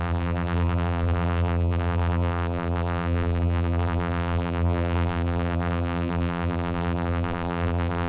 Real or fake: fake